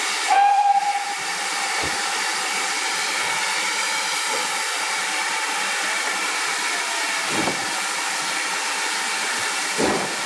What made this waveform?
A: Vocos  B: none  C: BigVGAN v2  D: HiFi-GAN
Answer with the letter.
C